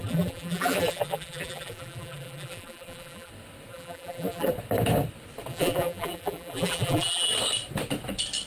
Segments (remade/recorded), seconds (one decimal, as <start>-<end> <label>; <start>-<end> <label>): 0.0-3.3 remade; 3.3-3.7 recorded; 3.7-4.5 remade; 4.5-5.5 recorded; 5.5-7.3 remade; 7.3-8.5 recorded